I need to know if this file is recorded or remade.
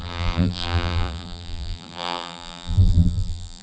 remade